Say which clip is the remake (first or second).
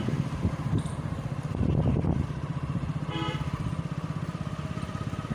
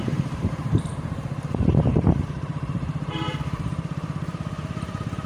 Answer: second